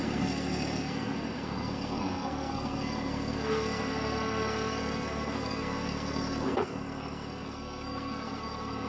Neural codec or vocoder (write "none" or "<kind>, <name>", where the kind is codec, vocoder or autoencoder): codec, SNAC